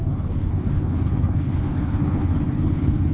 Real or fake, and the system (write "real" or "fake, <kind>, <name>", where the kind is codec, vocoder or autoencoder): fake, codec, HILCodec